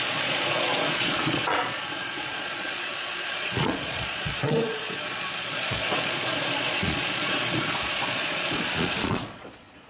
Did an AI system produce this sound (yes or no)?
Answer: yes